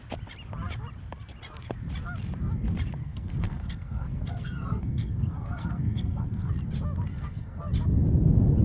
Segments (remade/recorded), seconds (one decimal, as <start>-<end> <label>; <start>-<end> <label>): 0.0-3.0 recorded; 3.0-6.5 remade; 6.5-7.1 recorded; 7.1-7.6 remade; 7.6-8.6 recorded